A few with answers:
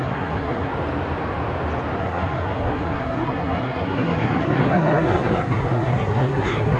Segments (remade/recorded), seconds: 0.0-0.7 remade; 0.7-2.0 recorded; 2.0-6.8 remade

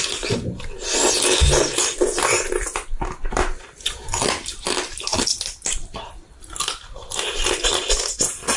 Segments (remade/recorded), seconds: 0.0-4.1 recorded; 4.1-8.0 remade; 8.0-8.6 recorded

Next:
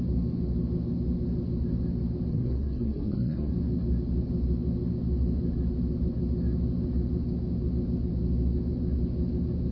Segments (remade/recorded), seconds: 0.0-2.3 recorded; 2.3-3.5 remade; 3.5-9.7 recorded

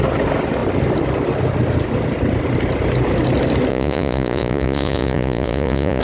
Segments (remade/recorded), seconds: 0.0-3.7 recorded; 3.7-6.0 remade

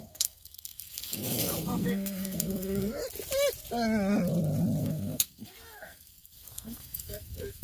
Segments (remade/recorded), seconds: 0.0-3.0 remade; 3.0-4.8 recorded; 4.8-7.6 remade

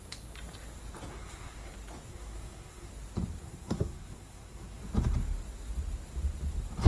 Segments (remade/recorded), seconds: 0.0-1.1 recorded; 1.1-1.7 remade; 1.7-2.1 recorded; 2.1-2.9 remade; 2.9-3.4 recorded; 3.4-4.8 remade; 4.8-6.9 recorded

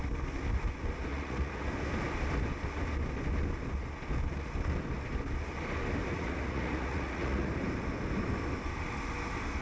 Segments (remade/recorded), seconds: 0.0-1.1 recorded; 1.1-1.7 remade; 1.7-6.1 recorded; 6.1-7.5 remade; 7.5-9.6 recorded